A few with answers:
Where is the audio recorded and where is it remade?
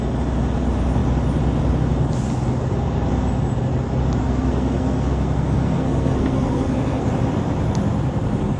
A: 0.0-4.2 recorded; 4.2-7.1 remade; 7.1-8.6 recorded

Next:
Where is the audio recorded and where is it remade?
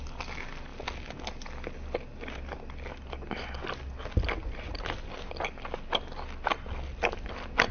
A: 0.0-7.7 recorded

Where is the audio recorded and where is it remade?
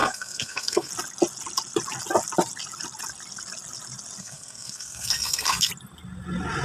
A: 0.0-0.9 remade; 0.9-4.2 recorded; 4.2-5.7 remade; 5.7-6.6 recorded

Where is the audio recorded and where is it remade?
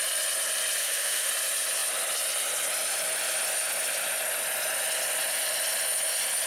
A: 0.0-0.8 recorded; 0.8-1.3 remade; 1.3-6.5 recorded